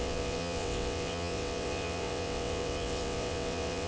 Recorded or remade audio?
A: remade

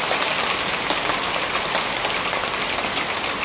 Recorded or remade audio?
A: recorded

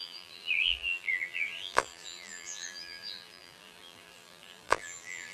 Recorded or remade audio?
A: remade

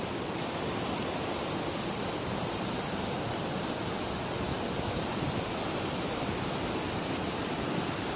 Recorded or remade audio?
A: recorded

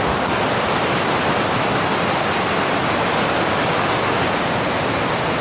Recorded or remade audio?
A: recorded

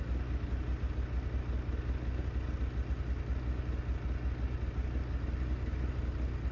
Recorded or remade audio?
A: recorded